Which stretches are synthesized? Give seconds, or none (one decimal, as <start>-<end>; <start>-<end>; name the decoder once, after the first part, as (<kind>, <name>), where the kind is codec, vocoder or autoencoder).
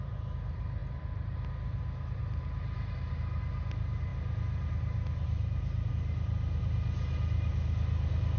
none